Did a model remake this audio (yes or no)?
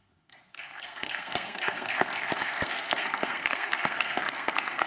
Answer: yes